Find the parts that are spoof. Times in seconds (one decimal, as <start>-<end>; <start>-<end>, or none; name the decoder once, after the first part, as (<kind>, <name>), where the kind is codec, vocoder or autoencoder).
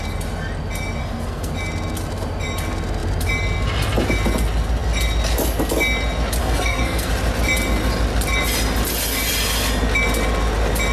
1.0-1.5 (codec, SNAC); 6.4-7.1